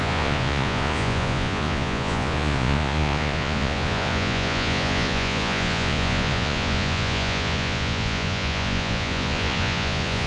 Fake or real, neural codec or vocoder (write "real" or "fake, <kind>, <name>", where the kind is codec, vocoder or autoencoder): fake, vocoder, Vocos